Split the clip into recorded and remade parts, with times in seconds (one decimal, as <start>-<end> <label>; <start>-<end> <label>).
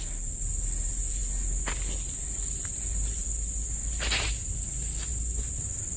0.0-6.0 recorded